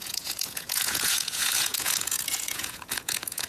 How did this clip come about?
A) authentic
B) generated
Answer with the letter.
B